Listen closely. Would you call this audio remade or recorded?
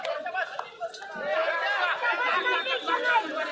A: recorded